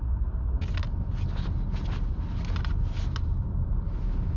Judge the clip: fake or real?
real